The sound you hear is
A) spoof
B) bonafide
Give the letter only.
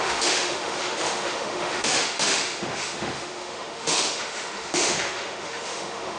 A